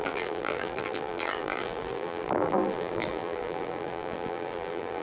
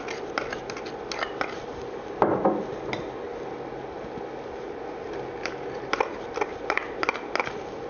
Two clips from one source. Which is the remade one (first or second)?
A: first